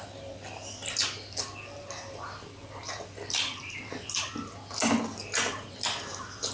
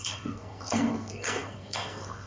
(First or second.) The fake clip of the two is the second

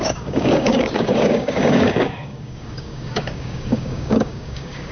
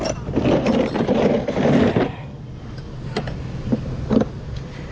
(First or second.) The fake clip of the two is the first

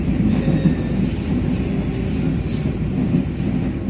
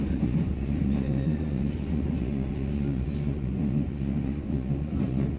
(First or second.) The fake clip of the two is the second